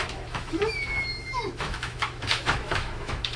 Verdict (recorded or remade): remade